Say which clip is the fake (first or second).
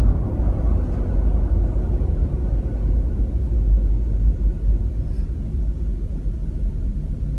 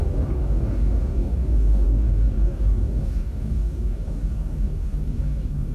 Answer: second